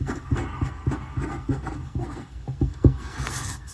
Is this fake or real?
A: fake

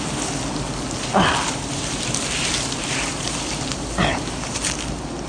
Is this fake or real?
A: real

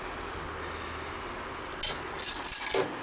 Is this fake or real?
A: real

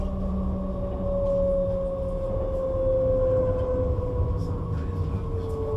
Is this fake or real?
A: real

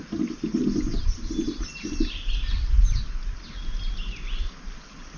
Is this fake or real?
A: real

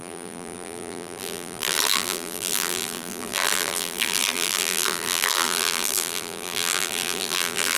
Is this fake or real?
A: fake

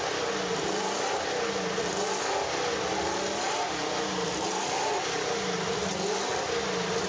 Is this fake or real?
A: real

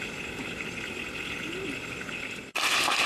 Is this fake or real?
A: real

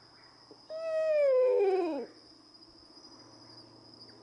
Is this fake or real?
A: real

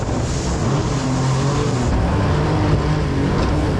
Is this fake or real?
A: real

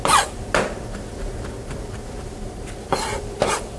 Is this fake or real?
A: fake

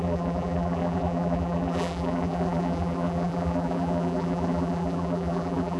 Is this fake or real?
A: fake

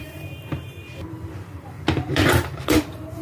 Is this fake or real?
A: fake